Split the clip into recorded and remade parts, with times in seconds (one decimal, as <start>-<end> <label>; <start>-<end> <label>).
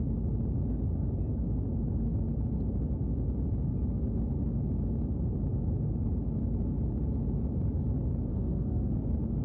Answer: 0.0-8.3 recorded; 8.3-8.9 remade; 8.9-9.4 recorded